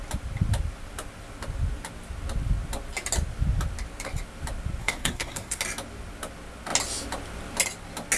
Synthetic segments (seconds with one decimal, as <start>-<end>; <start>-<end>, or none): 4.8-5.6